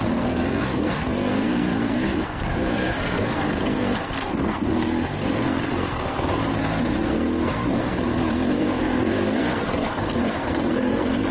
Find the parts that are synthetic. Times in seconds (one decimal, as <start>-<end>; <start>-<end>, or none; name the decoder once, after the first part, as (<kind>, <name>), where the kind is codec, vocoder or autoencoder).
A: 0.0-11.3 (codec, SNAC)